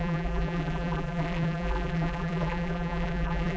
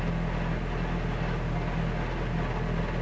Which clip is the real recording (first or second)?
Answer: second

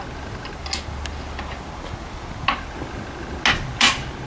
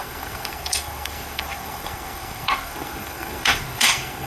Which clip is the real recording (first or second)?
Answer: first